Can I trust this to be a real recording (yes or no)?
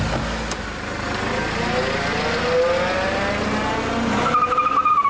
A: yes